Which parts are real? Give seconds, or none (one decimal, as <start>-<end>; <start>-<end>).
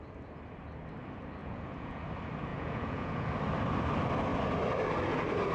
0.0-1.4; 2.0-2.5; 3.3-5.5